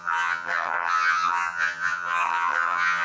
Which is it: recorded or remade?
remade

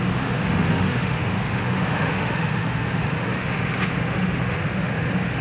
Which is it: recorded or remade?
remade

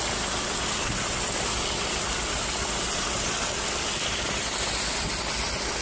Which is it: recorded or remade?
recorded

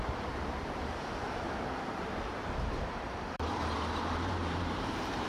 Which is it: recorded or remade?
remade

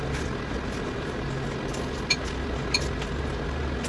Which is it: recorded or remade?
recorded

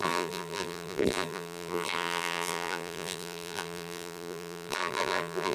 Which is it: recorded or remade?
remade